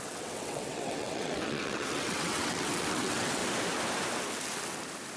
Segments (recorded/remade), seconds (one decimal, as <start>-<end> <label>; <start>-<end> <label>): 0.0-3.4 remade; 3.4-5.2 recorded